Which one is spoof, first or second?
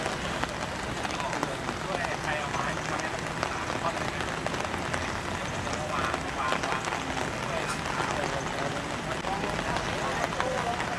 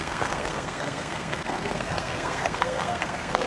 second